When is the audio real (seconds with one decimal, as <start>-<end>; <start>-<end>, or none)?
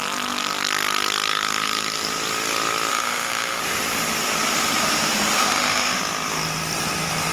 0.0-2.9; 3.6-5.3; 6.0-7.3